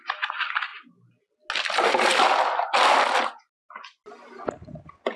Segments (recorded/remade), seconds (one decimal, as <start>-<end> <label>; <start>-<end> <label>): 0.0-5.2 recorded

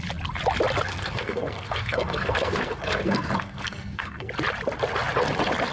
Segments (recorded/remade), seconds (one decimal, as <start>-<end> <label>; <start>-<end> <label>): 0.0-0.9 recorded; 0.9-4.3 remade; 4.3-5.7 recorded

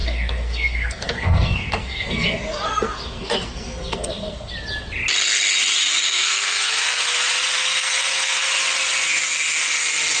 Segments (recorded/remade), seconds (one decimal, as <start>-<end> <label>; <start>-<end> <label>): 0.0-4.5 remade; 4.5-6.0 recorded; 6.0-7.1 remade; 7.1-7.6 recorded; 7.6-8.5 remade; 8.5-10.2 recorded

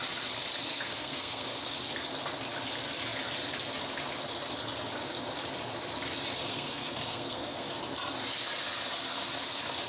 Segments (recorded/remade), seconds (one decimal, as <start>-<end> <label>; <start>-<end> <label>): 0.0-0.7 recorded; 0.7-1.6 remade; 1.6-6.5 recorded; 6.5-7.8 remade; 7.8-9.9 recorded

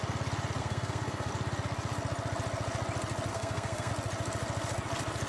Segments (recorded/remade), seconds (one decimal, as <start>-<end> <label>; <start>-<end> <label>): 0.0-0.6 recorded; 0.6-1.3 remade; 1.3-3.3 recorded; 3.3-3.9 remade; 3.9-5.3 recorded

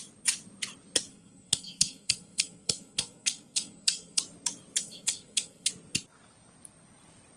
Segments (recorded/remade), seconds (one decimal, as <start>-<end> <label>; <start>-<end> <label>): 0.0-1.1 recorded; 1.1-4.2 remade; 4.2-4.8 recorded; 4.8-5.7 remade; 5.7-7.4 recorded

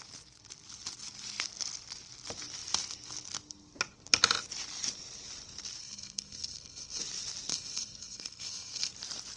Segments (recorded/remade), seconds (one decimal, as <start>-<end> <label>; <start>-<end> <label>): 0.0-5.8 recorded; 5.8-7.0 remade; 7.0-7.5 recorded; 7.5-8.9 remade; 8.9-9.4 recorded